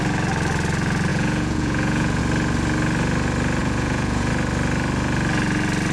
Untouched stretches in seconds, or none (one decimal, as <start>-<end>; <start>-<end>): 0.0-1.1; 2.2-3.6; 4.3-5.9